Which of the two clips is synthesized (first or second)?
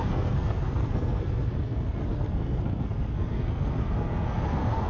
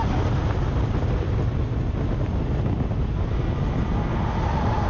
first